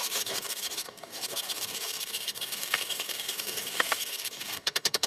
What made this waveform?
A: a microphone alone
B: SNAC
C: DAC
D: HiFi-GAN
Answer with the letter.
C